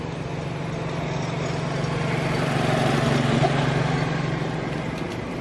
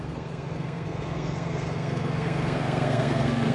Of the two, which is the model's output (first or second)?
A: second